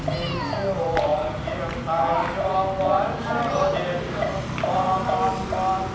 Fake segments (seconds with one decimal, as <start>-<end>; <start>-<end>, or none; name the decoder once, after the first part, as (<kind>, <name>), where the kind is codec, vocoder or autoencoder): none